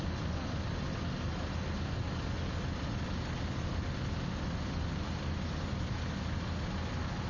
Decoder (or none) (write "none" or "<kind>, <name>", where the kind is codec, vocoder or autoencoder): none